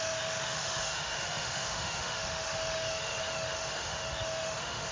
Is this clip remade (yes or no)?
yes